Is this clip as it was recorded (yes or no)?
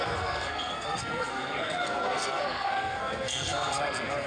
no